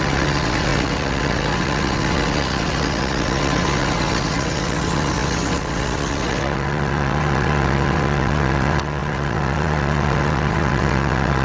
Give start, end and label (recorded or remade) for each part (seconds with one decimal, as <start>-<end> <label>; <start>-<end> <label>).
0.0-11.4 remade